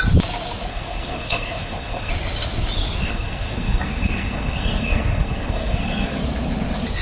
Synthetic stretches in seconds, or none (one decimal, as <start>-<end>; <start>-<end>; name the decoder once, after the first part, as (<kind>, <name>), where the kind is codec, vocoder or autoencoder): 0.7-2.1 (codec, SNAC); 3.0-6.2